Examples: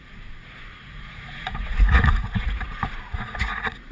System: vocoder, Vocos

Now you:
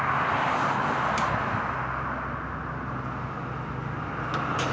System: none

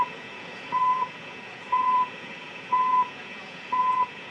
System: vocoder, Vocos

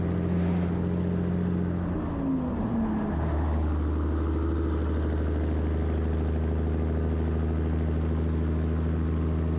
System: none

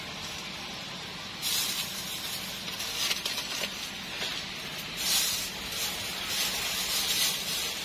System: none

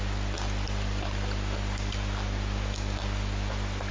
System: none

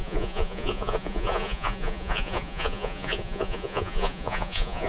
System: vocoder, Vocos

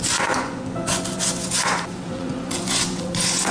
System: vocoder, Vocos